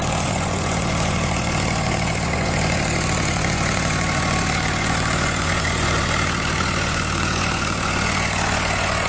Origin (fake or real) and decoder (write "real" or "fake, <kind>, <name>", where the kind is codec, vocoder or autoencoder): fake, vocoder, Vocos